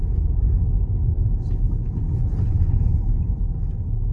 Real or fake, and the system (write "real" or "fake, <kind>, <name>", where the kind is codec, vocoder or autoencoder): real